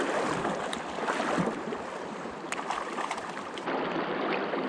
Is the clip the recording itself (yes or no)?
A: yes